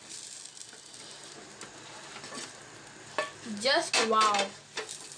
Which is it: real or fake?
real